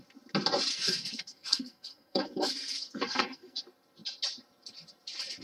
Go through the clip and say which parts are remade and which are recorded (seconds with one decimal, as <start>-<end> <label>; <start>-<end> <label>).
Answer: 0.0-0.7 recorded; 0.7-3.6 remade; 3.6-5.4 recorded